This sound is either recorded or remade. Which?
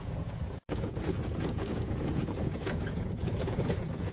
remade